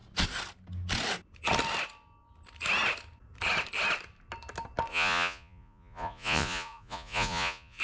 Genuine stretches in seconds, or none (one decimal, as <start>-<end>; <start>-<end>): 0.0-4.9